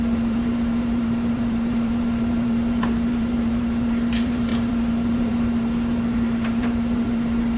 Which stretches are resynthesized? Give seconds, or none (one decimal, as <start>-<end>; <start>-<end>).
0.0-7.6